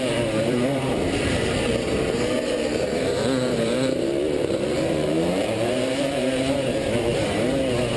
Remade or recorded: remade